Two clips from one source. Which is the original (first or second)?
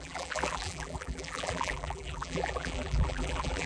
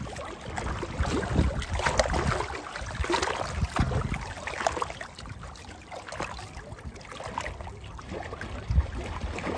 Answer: second